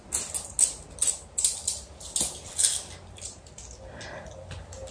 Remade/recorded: recorded